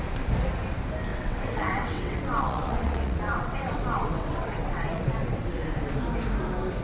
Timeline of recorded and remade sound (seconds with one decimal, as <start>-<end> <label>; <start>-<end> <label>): 0.0-1.1 recorded; 1.1-5.2 remade; 5.2-6.8 recorded